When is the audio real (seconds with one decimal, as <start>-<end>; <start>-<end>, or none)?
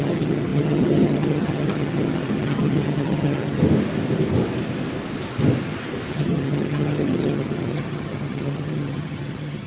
3.6-6.1